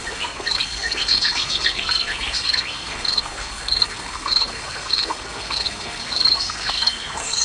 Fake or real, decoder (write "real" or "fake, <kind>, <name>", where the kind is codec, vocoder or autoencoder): fake, codec, SNAC